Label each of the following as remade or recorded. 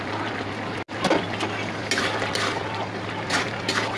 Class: recorded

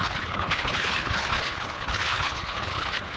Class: remade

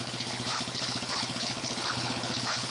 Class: remade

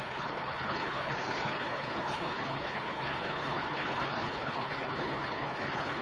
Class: remade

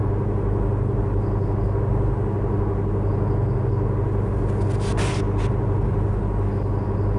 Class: recorded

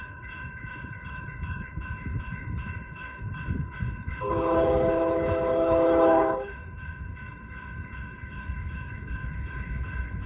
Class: remade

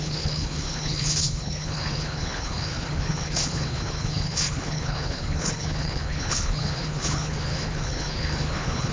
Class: remade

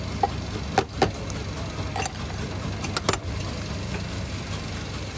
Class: recorded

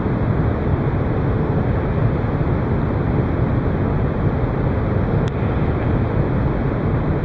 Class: recorded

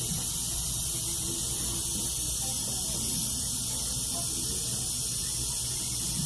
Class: recorded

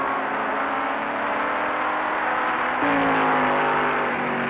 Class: recorded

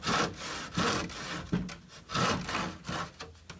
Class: recorded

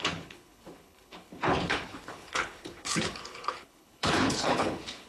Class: remade